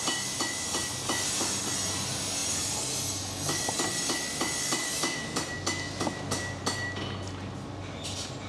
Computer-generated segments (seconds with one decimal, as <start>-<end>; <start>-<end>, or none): none